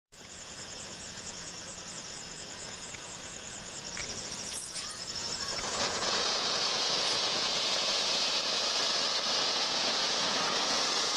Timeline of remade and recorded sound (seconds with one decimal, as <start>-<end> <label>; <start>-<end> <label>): 0.0-8.8 remade; 8.8-9.5 recorded; 9.5-11.2 remade